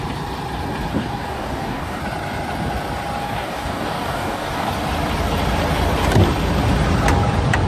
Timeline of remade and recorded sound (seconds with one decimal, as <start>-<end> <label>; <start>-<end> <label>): 0.0-0.9 recorded; 0.9-2.0 remade; 2.0-3.2 recorded; 3.2-4.7 remade; 4.7-7.7 recorded